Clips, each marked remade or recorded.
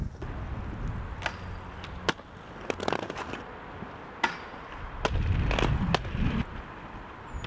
recorded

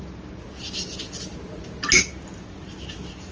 recorded